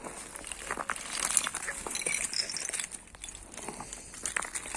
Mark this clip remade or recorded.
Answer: recorded